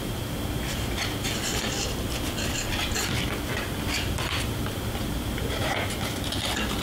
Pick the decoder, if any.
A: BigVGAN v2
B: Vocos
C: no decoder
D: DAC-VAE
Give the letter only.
A